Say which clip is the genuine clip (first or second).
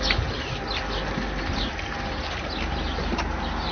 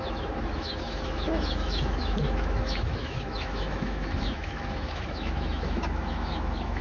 first